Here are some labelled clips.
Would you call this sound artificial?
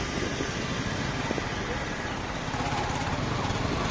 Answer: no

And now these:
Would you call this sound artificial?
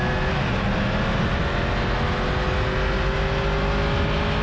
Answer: no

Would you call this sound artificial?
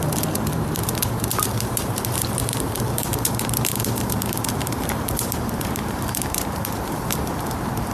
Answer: yes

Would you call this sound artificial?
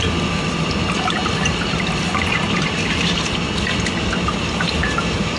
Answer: yes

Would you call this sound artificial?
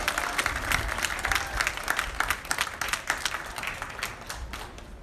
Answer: no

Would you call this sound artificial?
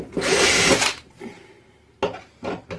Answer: no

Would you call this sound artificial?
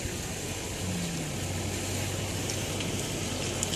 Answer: no